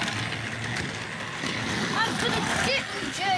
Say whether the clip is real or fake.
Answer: real